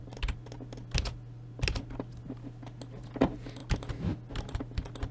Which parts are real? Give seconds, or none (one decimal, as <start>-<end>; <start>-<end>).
0.0-5.1